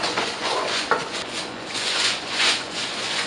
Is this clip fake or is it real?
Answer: fake